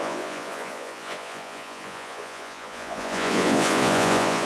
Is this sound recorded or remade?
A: remade